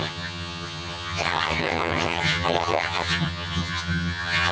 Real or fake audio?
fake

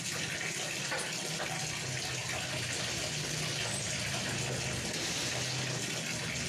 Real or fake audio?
real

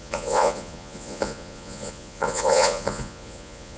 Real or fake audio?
fake